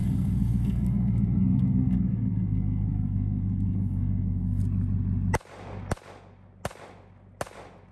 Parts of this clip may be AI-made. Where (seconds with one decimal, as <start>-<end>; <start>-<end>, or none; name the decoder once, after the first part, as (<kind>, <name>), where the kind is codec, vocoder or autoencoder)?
0.0-4.6 (codec, SNAC)